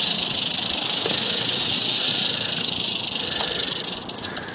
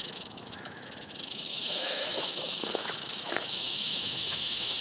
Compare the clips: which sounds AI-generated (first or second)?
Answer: second